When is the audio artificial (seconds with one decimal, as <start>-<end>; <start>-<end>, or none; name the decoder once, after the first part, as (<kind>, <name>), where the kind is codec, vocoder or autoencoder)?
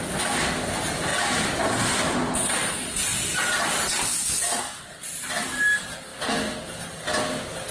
none